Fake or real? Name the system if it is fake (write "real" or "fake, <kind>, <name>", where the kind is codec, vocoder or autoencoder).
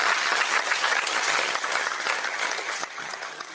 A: fake, vocoder, HiFi-GAN